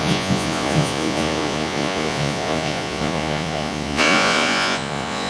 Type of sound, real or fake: fake